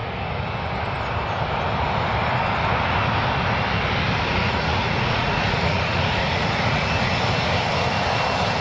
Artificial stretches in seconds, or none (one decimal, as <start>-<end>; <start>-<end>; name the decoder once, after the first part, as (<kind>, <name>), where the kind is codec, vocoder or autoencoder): 4.3-7.1 (vocoder, Vocos)